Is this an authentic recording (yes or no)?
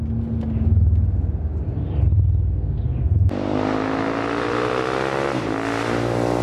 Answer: yes